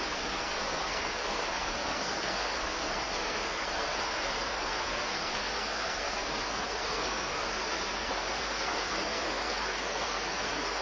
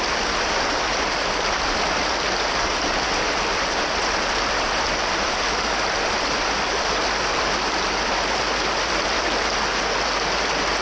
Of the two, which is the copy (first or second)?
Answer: first